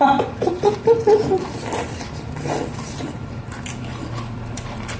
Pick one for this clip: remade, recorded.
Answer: remade